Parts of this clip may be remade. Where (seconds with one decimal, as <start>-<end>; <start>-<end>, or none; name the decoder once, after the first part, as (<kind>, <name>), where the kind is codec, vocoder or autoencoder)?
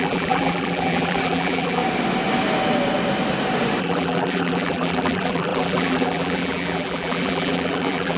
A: 0.0-1.8 (vocoder, BigVGAN v2); 3.8-8.2